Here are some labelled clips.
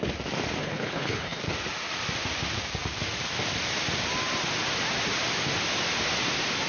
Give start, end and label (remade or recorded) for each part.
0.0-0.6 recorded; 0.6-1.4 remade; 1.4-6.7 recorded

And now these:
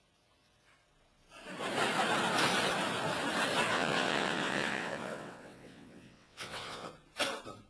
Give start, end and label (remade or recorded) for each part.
0.0-3.7 recorded; 3.7-6.9 remade; 6.9-7.7 recorded

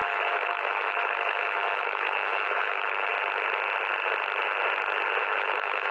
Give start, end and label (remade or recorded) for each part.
0.0-3.1 remade; 3.1-5.2 recorded; 5.2-5.9 remade

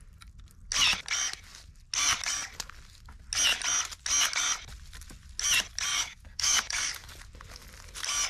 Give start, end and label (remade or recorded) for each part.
0.0-5.9 recorded; 5.9-7.1 remade; 7.1-8.3 recorded

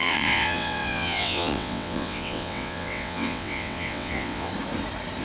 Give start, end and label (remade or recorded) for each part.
0.0-4.5 remade; 4.5-5.2 recorded

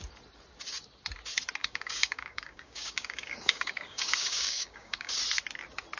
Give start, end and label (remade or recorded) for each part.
0.0-1.6 recorded; 1.6-5.2 remade; 5.2-6.0 recorded

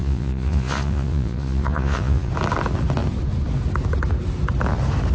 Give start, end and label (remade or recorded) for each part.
0.0-2.3 remade; 2.3-5.1 recorded